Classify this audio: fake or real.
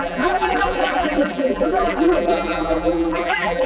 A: fake